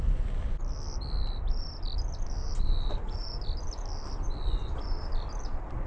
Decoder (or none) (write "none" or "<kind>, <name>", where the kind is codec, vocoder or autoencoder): none